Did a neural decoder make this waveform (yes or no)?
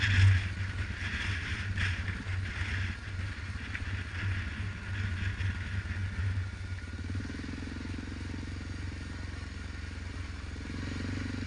no